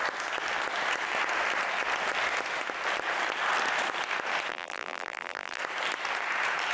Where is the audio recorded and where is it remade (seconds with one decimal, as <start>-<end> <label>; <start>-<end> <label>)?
0.0-4.5 recorded; 4.5-5.6 remade; 5.6-6.7 recorded